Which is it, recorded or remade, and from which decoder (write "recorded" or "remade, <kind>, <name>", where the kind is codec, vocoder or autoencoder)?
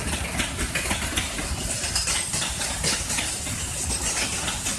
recorded